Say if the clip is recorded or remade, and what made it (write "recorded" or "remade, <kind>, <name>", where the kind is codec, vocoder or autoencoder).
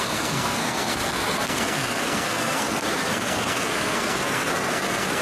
remade, codec, SNAC